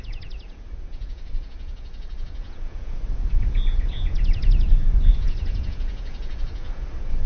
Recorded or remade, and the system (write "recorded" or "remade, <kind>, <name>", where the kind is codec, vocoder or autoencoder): remade, vocoder, Vocos